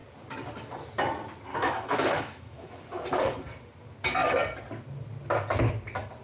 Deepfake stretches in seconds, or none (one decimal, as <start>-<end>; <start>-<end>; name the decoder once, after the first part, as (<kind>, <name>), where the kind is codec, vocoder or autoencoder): 1.5-2.7 (autoencoder, DAC-VAE)